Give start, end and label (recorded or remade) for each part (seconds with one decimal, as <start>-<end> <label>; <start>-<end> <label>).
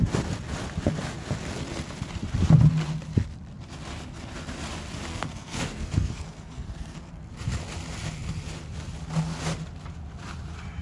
0.0-5.1 recorded; 5.1-7.1 remade; 7.1-10.8 recorded